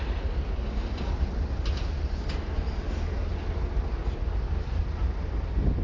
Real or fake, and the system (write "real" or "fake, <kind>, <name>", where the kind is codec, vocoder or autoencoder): real